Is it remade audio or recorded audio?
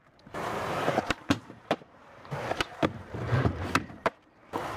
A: remade